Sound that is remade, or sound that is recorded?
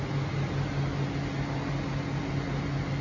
recorded